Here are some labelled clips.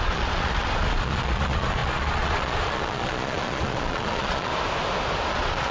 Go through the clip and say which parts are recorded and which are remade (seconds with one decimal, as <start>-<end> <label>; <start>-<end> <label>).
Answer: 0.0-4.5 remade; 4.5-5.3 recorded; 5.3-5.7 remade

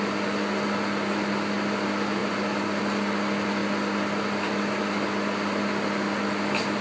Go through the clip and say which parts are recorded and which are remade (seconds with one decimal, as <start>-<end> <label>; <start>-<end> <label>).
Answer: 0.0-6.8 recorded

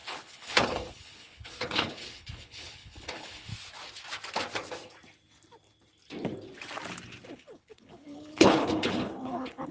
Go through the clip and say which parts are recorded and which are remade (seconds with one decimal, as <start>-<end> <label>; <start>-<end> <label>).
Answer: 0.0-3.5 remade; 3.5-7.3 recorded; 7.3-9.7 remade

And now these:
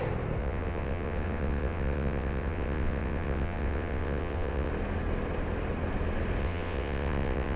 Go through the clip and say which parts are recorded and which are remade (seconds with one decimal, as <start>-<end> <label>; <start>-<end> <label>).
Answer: 0.0-0.4 recorded; 0.4-4.7 remade; 4.7-6.4 recorded; 6.4-7.6 remade

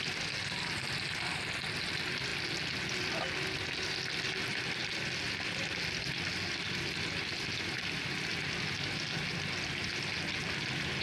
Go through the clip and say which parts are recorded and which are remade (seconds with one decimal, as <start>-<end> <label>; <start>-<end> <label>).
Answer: 0.0-11.0 recorded

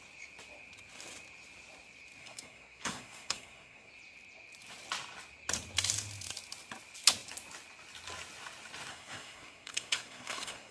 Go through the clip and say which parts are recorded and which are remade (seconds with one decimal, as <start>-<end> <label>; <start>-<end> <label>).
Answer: 0.0-2.2 recorded; 2.2-3.9 remade; 3.9-8.9 recorded; 8.9-10.7 remade

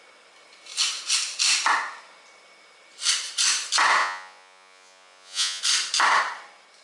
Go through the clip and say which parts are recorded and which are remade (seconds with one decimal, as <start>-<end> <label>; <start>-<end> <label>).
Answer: 0.0-4.0 recorded; 4.0-5.6 remade; 5.6-6.8 recorded

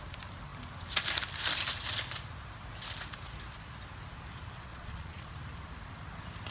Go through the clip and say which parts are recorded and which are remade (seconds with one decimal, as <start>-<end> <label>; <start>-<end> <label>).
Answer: 0.0-4.7 recorded; 4.7-5.3 remade; 5.3-6.5 recorded